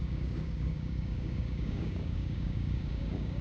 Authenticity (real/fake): fake